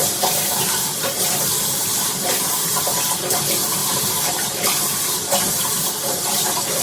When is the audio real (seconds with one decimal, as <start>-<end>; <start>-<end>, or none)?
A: none